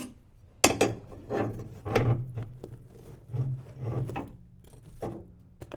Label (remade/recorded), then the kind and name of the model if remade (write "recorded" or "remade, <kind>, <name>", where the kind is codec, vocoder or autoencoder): recorded